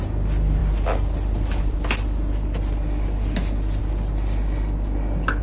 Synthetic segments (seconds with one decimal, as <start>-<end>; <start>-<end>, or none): none